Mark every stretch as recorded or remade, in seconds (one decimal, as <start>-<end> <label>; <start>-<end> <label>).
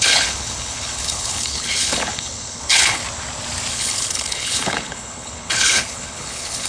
0.0-3.0 remade; 3.0-3.7 recorded; 3.7-6.7 remade